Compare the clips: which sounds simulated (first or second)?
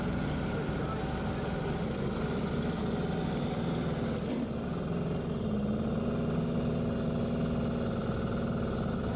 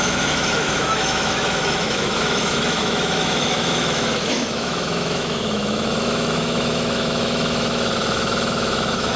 second